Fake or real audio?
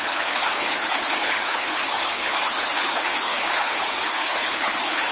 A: fake